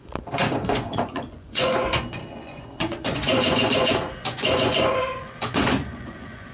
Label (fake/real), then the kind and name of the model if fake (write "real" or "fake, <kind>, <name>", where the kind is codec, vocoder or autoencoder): fake, vocoder, Vocos